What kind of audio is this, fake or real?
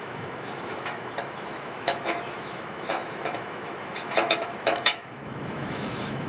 fake